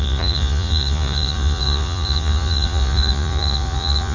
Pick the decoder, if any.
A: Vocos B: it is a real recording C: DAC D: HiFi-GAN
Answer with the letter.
A